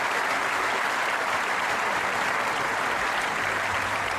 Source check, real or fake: real